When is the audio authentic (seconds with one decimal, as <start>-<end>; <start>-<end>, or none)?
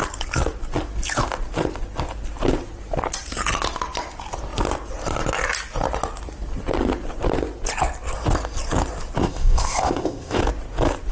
0.0-9.2; 10.4-11.1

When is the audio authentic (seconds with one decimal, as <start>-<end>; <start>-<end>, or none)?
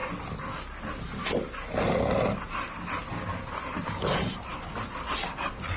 0.0-5.8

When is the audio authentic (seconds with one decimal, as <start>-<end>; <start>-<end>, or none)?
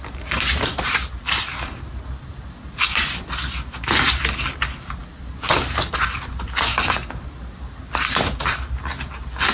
0.0-9.5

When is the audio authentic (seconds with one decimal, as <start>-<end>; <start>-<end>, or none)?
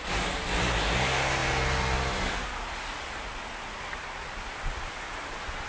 0.0-5.7